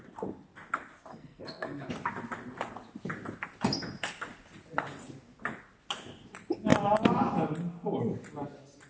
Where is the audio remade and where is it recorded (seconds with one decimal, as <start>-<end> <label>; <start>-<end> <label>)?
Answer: 0.0-1.1 recorded; 1.1-1.9 remade; 1.9-8.9 recorded